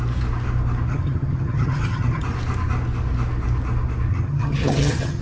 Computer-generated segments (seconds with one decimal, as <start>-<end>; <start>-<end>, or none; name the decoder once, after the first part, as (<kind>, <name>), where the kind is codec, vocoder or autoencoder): 0.9-2.2 (vocoder, HiFi-GAN); 4.1-5.2